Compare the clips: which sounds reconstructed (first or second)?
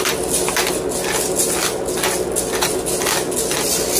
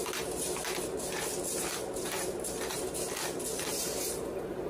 second